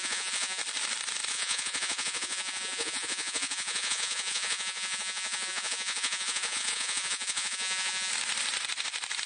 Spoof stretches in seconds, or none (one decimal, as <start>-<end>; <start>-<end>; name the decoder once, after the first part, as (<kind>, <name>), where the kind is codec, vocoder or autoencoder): 0.0-0.6 (vocoder, Vocos); 1.3-8.1

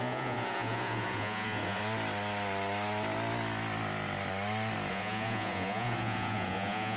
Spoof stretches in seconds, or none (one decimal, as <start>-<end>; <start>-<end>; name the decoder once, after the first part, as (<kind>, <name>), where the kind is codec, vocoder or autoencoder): 0.0-1.8 (vocoder, Vocos); 4.9-7.0

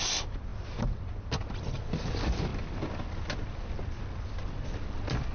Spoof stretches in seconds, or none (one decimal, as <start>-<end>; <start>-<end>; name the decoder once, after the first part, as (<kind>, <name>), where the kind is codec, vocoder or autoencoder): none

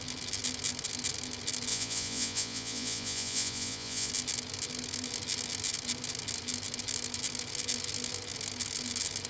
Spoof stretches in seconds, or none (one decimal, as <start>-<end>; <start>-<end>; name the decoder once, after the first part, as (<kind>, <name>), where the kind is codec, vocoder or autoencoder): 1.7-4.1 (vocoder, Vocos)

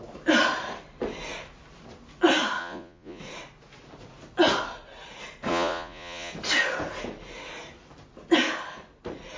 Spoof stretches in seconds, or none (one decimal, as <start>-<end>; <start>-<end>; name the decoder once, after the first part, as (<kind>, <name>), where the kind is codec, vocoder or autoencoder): 2.6-3.2 (vocoder, Vocos); 5.5-6.3

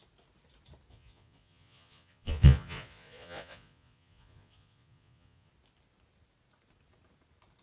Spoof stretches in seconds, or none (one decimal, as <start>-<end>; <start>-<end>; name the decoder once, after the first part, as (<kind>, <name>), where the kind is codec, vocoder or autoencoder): 0.9-5.5 (vocoder, Vocos)